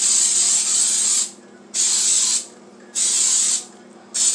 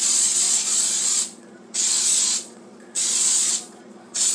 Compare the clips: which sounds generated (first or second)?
second